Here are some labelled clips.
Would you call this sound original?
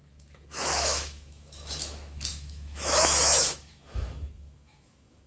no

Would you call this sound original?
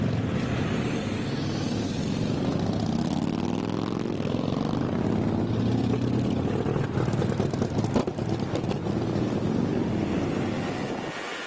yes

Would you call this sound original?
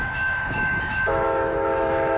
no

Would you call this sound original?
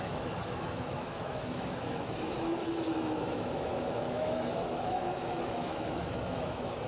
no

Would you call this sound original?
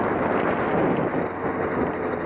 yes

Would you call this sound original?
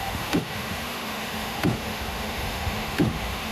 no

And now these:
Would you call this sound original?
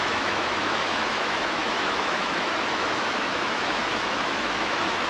no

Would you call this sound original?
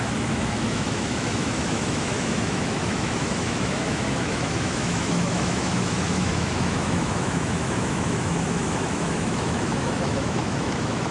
no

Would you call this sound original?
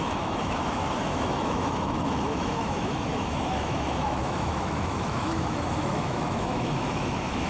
no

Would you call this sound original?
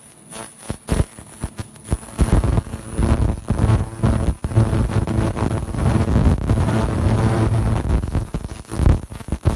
yes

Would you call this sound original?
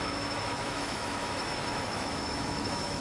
no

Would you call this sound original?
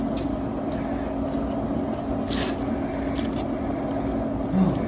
yes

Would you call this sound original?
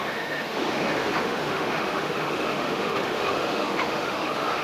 no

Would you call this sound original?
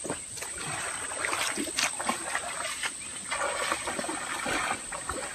yes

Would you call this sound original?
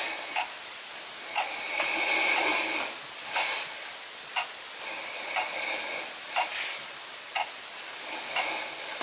yes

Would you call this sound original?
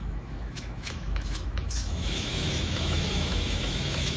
no